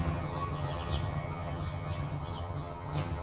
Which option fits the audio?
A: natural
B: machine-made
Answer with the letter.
B